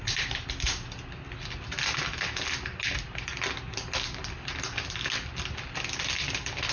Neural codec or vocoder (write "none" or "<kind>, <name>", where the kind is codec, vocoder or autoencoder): none